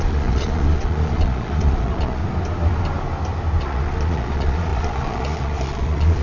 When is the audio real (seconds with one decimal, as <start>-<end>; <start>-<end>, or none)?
2.2-3.6